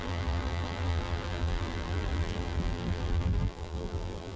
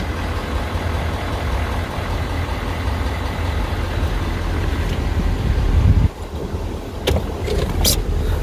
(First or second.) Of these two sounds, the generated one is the first